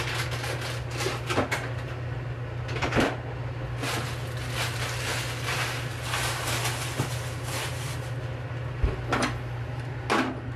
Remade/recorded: recorded